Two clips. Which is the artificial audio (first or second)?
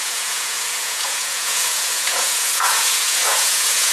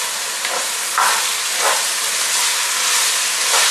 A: first